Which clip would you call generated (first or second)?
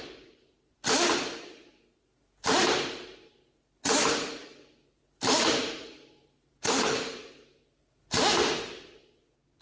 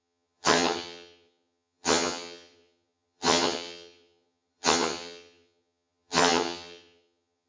second